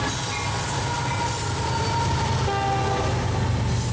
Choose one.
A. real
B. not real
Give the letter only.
A